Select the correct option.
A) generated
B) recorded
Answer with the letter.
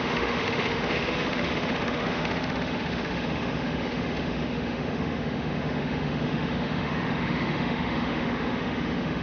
A